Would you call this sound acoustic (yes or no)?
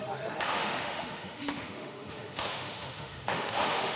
no